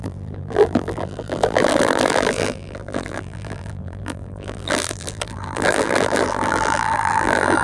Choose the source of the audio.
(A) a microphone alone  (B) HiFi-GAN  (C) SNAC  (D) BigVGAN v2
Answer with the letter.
D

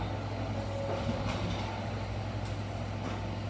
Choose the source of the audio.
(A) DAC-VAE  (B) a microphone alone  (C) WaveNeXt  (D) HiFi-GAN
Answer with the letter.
B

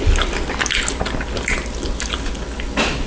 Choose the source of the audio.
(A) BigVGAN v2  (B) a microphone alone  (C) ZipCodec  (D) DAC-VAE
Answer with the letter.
B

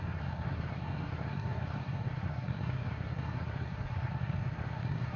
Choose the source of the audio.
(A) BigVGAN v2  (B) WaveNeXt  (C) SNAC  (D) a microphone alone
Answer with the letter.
C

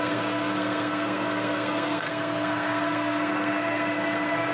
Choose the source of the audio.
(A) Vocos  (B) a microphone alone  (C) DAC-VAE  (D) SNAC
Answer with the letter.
D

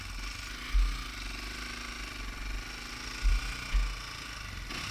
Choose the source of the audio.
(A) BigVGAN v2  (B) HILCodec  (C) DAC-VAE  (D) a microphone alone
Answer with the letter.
D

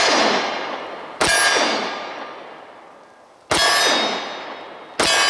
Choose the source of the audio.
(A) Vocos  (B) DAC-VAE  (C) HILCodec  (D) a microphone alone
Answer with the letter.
D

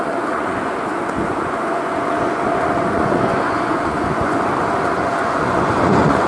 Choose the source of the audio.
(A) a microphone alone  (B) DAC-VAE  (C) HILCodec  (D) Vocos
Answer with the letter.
D